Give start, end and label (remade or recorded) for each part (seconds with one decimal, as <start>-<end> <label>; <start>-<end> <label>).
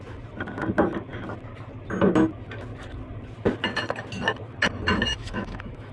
0.0-5.1 recorded; 5.1-5.9 remade